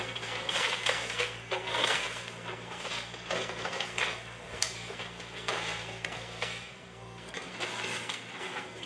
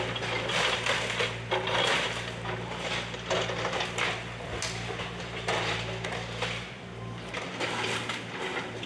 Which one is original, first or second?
second